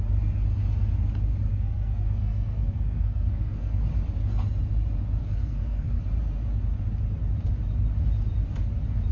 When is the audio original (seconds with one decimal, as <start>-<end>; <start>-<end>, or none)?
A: 0.0-1.5; 3.8-5.2; 6.0-9.1